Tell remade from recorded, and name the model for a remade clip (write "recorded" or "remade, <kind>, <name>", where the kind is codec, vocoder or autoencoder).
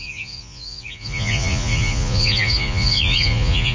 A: remade, vocoder, Vocos